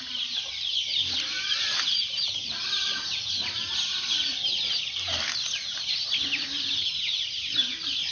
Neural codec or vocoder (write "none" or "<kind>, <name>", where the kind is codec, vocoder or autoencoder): vocoder, BigVGAN v2